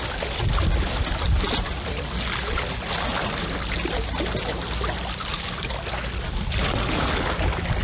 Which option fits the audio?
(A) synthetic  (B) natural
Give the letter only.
B